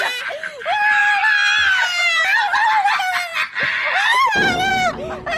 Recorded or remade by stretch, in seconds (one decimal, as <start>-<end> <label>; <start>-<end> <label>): 0.0-5.4 recorded